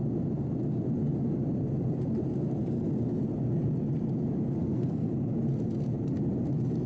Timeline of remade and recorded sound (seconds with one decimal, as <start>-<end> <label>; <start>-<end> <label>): 0.0-4.6 recorded; 4.6-5.1 remade; 5.1-6.9 recorded